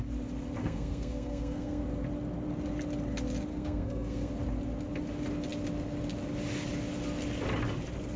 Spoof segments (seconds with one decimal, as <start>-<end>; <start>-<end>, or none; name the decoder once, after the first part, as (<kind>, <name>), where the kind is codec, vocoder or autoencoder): 0.6-1.8 (codec, SNAC); 3.5-4.3